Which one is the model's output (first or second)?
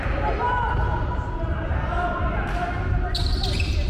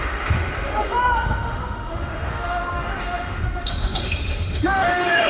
second